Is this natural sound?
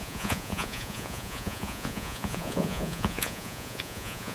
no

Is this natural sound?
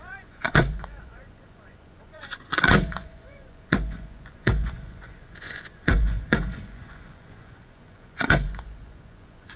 no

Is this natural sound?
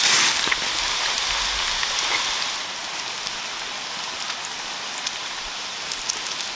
yes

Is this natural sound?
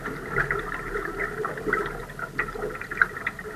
yes